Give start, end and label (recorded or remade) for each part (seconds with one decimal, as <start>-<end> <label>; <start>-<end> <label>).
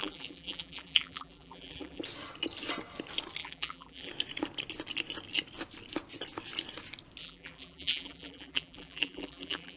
0.0-2.0 remade; 2.0-3.4 recorded; 3.4-4.1 remade; 4.1-7.2 recorded; 7.2-9.8 remade